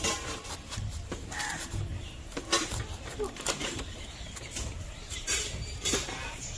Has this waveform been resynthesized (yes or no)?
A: yes